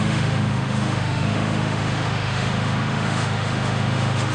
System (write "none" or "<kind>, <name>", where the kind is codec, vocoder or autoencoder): autoencoder, DAC-VAE